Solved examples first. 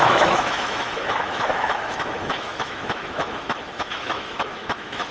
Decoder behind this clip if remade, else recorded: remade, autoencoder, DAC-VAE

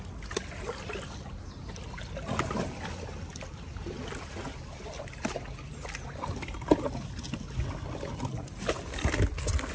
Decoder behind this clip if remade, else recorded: recorded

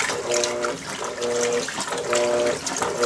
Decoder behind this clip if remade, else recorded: recorded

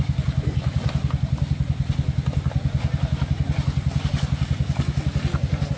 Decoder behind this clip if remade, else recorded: recorded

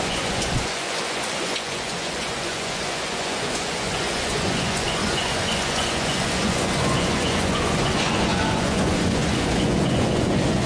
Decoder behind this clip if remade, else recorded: remade, vocoder, Vocos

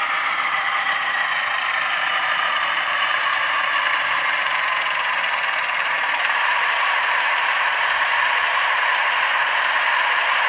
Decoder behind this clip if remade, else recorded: remade, vocoder, BigVGAN v2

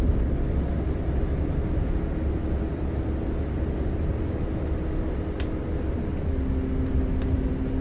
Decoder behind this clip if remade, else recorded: recorded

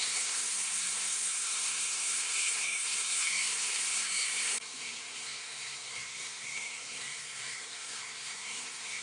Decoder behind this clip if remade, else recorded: remade, codec, SNAC